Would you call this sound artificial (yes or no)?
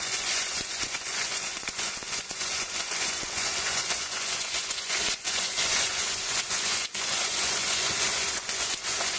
yes